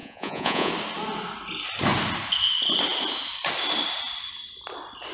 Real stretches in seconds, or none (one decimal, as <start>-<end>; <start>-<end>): 0.7-5.1